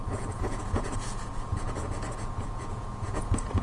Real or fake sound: fake